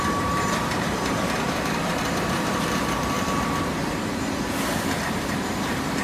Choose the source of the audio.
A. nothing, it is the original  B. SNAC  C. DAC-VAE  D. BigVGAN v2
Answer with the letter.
D